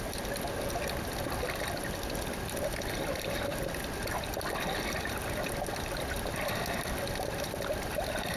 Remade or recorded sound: recorded